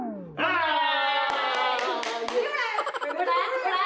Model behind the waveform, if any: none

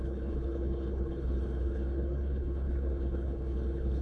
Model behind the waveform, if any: codec, HILCodec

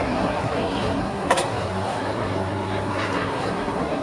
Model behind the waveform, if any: codec, SNAC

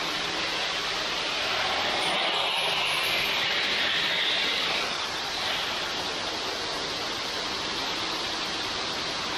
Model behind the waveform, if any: none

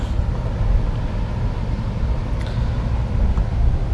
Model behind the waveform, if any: none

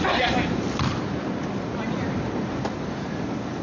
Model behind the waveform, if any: vocoder, BigVGAN v2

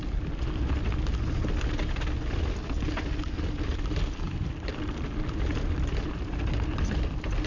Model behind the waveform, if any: none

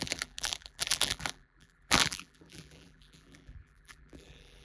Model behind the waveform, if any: vocoder, BigVGAN v2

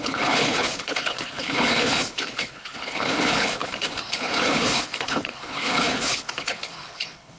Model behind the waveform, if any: codec, HILCodec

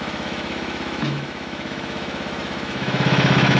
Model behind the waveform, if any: autoencoder, DAC-VAE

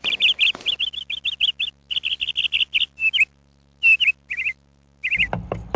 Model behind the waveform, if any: none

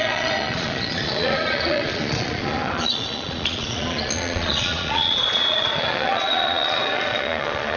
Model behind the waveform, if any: vocoder, Vocos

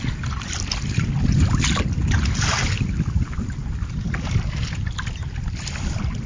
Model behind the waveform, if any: none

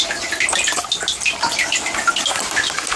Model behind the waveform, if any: none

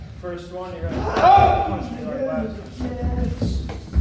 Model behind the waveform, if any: none